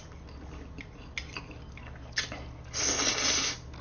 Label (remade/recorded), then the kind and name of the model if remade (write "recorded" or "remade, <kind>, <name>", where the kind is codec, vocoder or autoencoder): recorded